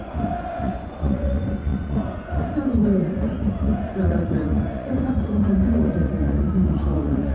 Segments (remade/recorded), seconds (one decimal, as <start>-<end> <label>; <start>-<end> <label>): 0.0-7.3 remade